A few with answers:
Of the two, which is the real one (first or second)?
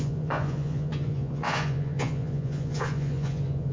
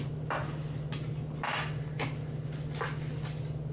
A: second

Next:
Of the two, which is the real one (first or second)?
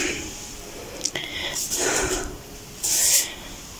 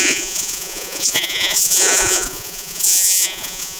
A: first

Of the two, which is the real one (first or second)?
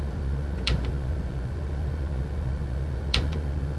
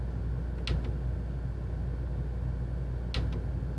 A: second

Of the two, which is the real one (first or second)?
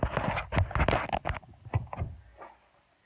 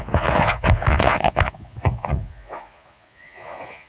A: first